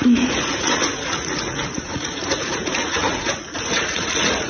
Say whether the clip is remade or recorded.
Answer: remade